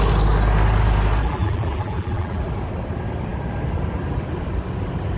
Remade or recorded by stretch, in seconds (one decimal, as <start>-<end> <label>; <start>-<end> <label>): 0.0-1.2 recorded; 1.2-2.4 remade; 2.4-5.2 recorded